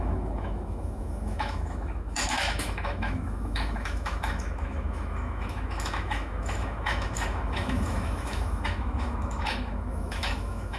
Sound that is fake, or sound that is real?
fake